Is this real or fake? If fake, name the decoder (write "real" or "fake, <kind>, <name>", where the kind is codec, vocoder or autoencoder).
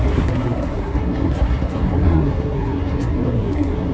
fake, codec, SNAC